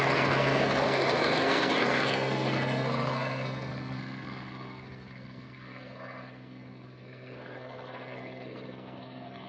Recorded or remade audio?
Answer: remade